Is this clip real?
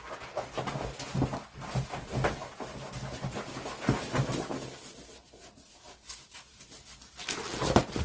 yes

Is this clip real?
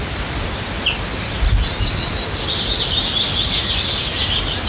yes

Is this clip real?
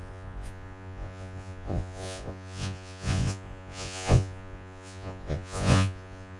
no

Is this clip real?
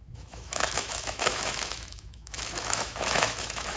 no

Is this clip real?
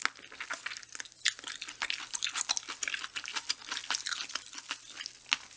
yes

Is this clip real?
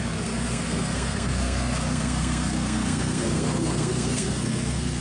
no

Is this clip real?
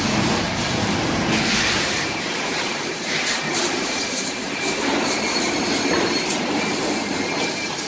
no